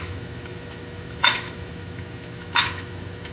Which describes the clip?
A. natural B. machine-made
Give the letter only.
B